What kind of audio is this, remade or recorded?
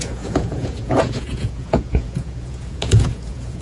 remade